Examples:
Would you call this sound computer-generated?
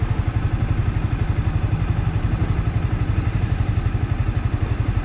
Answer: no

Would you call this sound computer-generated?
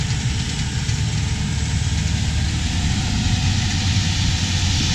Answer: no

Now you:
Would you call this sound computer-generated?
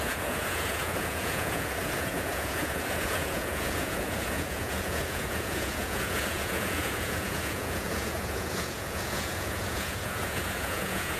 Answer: yes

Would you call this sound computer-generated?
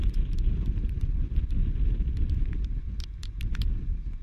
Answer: no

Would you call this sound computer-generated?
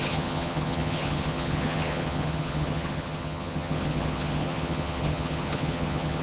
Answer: yes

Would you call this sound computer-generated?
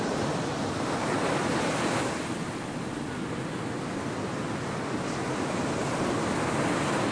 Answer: no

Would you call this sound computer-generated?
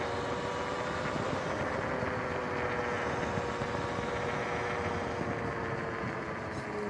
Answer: no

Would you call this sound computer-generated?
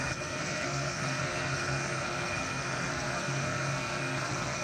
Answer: yes